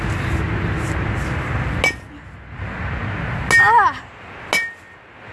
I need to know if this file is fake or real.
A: real